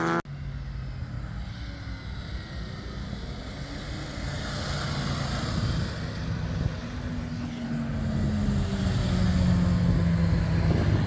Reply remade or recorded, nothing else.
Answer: recorded